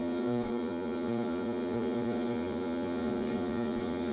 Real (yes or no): no